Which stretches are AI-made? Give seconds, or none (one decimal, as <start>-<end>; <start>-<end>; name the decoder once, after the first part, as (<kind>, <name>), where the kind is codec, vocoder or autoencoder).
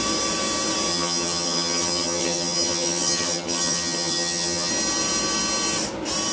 0.9-4.7 (vocoder, HiFi-GAN)